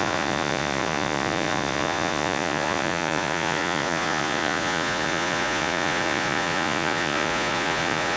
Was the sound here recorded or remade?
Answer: remade